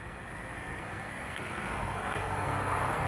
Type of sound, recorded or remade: remade